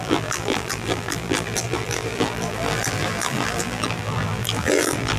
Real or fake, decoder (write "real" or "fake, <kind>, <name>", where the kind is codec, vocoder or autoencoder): fake, vocoder, BigVGAN v2